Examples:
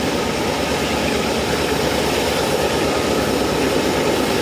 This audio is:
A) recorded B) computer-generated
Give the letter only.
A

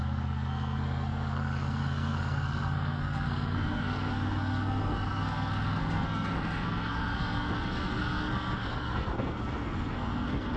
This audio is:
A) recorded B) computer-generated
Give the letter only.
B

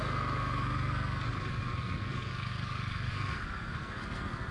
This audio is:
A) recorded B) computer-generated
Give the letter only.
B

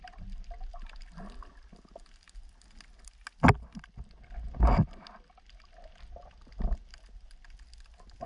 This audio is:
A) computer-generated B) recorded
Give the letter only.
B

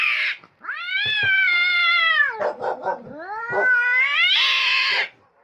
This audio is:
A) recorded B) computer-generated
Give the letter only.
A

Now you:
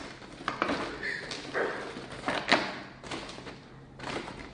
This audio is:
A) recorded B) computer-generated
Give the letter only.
A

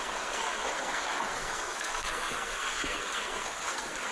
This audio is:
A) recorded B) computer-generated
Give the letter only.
B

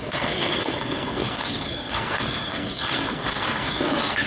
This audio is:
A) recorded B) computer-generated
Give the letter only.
B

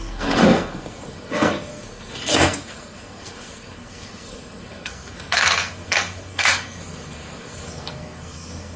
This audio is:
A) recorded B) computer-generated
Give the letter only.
B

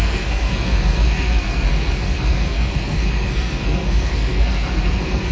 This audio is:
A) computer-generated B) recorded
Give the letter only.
A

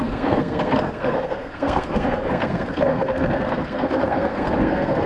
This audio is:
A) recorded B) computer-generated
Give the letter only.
B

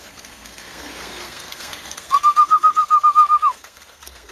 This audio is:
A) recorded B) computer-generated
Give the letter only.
B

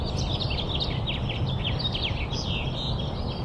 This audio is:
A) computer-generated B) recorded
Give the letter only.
B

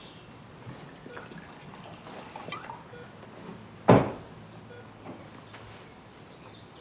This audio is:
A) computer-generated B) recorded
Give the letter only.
B